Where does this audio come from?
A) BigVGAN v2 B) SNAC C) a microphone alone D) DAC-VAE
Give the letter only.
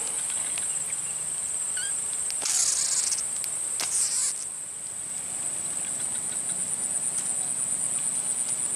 C